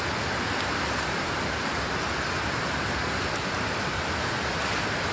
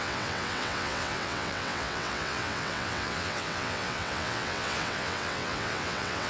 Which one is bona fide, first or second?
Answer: first